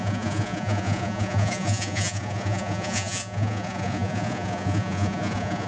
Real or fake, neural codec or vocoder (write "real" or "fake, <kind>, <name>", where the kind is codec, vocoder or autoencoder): fake, vocoder, Vocos